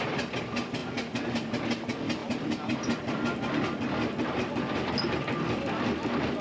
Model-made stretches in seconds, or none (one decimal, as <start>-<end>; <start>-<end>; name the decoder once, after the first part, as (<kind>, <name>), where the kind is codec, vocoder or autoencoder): 0.8-1.6 (vocoder, BigVGAN v2); 2.2-3.2